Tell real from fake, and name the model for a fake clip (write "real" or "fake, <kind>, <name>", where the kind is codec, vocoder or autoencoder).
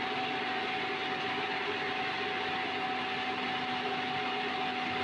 real